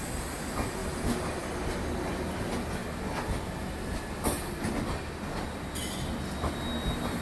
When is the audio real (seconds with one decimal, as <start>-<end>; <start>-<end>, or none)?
0.0-7.2